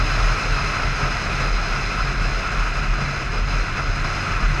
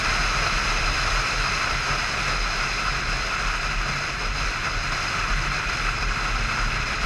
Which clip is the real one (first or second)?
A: first